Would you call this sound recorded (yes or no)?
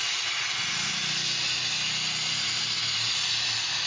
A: yes